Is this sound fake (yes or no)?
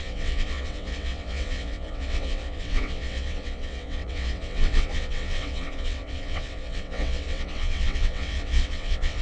yes